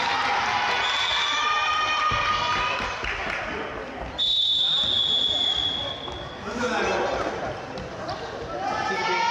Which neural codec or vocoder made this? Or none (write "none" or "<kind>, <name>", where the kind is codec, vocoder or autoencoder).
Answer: none